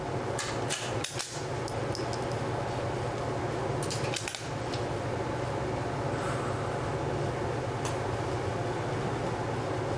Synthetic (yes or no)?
no